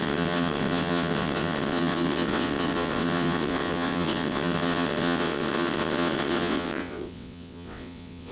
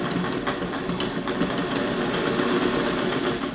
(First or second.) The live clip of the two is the second